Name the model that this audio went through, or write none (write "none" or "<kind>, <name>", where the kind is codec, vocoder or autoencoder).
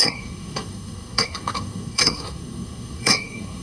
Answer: codec, SNAC